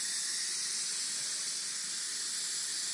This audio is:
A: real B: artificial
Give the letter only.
A